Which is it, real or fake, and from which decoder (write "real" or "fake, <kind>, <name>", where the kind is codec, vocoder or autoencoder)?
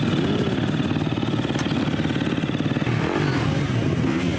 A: real